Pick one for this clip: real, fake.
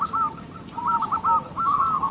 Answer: fake